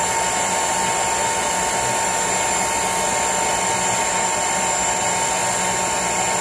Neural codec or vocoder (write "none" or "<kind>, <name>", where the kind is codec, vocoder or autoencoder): none